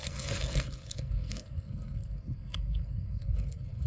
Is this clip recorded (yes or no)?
no